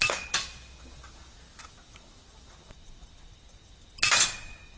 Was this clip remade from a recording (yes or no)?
no